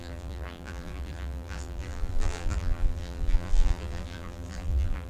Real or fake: fake